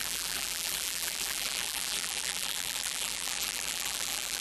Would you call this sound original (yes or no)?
no